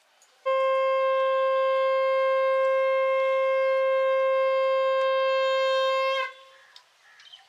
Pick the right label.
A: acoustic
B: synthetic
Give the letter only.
A